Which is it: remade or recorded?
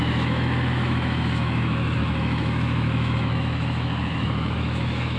remade